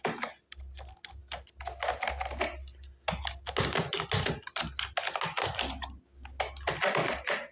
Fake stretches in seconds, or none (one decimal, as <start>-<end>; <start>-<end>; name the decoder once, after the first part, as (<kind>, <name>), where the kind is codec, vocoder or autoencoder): none